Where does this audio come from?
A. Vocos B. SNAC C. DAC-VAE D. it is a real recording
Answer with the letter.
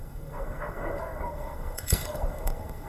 B